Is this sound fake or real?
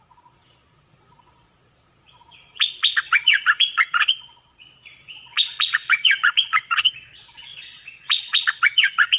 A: fake